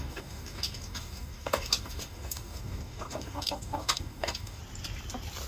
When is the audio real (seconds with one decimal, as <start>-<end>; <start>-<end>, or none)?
4.6-5.5